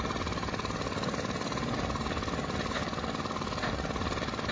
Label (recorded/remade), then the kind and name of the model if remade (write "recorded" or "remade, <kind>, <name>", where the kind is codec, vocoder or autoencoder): recorded